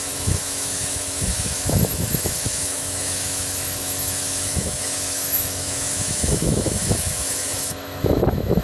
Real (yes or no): no